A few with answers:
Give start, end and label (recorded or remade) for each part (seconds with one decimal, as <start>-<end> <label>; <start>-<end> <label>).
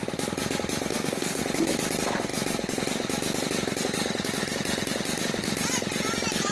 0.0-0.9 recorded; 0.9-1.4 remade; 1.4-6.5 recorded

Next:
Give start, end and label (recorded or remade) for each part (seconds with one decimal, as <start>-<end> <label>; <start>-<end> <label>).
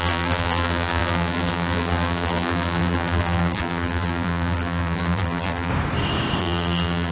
0.0-5.7 remade; 5.7-6.4 recorded; 6.4-7.1 remade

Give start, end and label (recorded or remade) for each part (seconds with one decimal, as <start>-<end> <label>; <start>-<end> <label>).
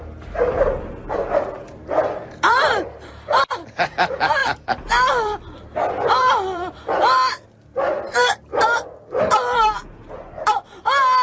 0.0-2.0 recorded; 2.0-3.4 remade; 3.4-4.4 recorded; 4.4-9.2 remade; 9.2-11.2 recorded